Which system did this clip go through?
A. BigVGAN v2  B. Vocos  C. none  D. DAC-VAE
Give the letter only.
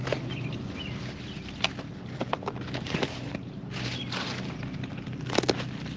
C